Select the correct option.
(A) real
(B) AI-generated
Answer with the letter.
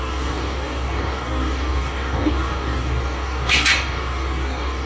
B